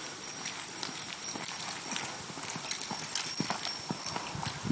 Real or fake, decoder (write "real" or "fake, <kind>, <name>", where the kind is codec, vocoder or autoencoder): real